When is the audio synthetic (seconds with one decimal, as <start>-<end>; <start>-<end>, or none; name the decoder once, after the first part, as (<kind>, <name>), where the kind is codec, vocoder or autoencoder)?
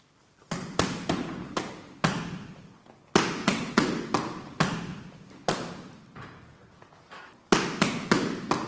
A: 3.4-4.1 (vocoder, WaveNeXt)